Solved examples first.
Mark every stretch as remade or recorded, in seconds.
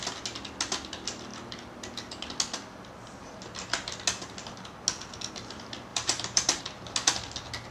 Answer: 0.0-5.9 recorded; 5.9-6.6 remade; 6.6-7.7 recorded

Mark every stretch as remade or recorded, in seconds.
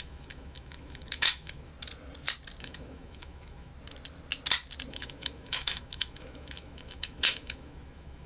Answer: 0.0-1.7 remade; 1.7-2.6 recorded; 2.6-3.7 remade; 3.7-4.9 recorded; 4.9-8.3 remade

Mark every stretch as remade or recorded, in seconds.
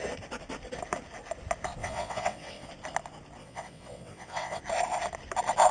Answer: 0.0-1.8 recorded; 1.8-2.7 remade; 2.7-3.4 recorded; 3.4-4.6 remade; 4.6-5.7 recorded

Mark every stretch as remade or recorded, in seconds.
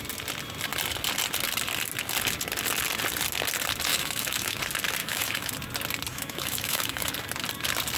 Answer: 0.0-3.9 recorded; 3.9-4.6 remade; 4.6-5.0 recorded; 5.0-5.5 remade; 5.5-6.1 recorded; 6.1-7.1 remade; 7.1-8.0 recorded